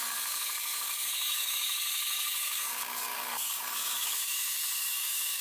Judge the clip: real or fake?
fake